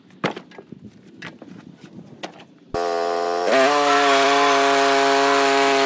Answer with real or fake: real